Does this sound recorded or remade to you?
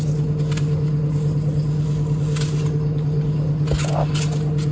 recorded